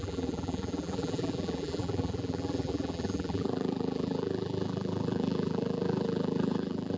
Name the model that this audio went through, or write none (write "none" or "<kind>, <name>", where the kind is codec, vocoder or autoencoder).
vocoder, BigVGAN v2